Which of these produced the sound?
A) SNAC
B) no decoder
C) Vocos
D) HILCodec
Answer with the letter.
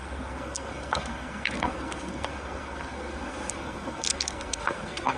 A